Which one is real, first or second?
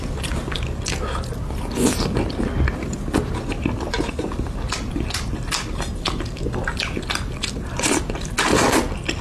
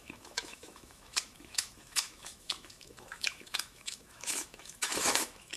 first